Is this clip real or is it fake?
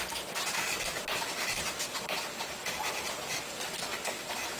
real